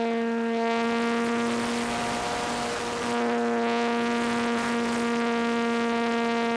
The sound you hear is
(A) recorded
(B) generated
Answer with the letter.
A